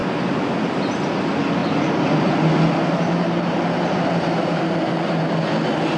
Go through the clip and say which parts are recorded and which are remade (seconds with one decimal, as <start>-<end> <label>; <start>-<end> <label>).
0.0-2.8 recorded; 2.8-5.2 remade; 5.2-6.0 recorded